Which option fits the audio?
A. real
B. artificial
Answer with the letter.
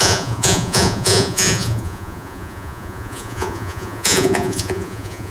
B